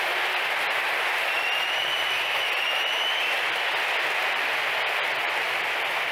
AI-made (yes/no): no